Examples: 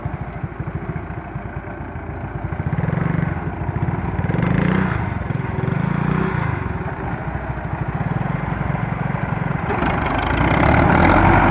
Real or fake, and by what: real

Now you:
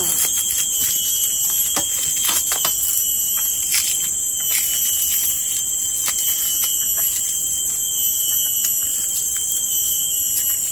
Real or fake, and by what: real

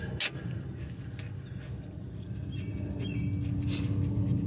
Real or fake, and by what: real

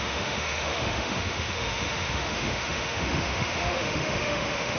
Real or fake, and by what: fake, autoencoder, DAC-VAE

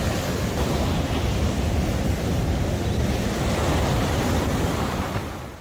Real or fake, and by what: real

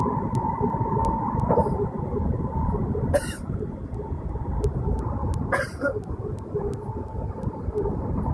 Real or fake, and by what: real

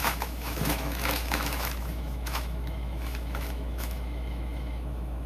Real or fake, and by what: fake, autoencoder, DAC-VAE